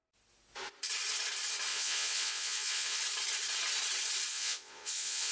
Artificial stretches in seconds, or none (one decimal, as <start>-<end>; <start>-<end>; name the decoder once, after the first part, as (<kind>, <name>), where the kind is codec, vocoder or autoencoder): 1.7-3.0 (vocoder, Vocos); 4.3-5.3